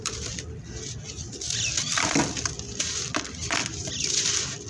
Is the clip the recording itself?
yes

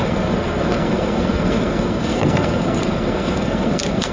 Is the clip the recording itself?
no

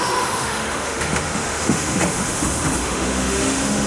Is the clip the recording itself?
no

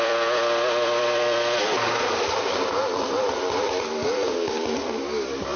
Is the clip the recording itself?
no